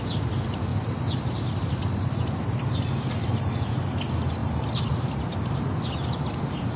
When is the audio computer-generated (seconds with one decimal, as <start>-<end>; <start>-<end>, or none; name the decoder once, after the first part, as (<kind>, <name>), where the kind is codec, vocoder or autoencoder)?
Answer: 0.7-1.4 (vocoder, BigVGAN v2); 1.8-4.0; 4.4-4.9